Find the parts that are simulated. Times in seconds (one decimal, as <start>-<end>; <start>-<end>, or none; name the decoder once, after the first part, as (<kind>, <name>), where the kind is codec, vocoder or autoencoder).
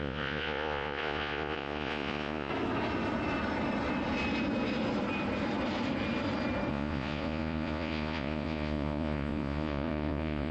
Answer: 0.0-2.5 (vocoder, Vocos); 6.7-10.5